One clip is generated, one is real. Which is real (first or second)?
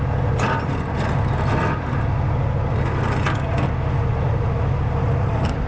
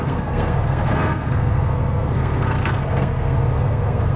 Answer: first